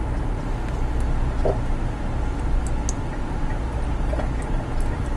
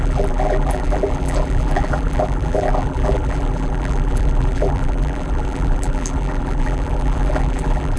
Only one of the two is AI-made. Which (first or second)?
second